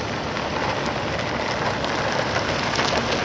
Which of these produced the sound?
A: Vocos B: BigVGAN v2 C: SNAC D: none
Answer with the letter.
D